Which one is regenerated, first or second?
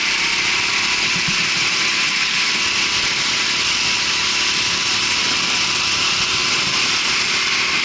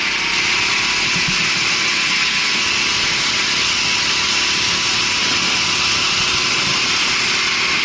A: first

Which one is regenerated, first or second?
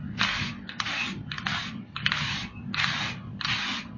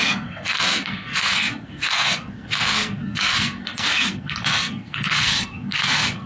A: second